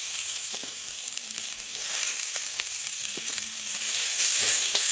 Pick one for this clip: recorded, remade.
remade